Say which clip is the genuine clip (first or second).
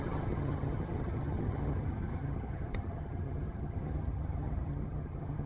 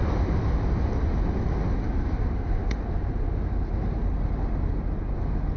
second